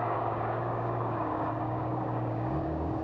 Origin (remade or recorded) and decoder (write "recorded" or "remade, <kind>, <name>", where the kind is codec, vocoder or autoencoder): remade, codec, DAC